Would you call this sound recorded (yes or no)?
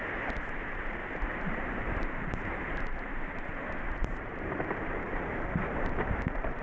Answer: no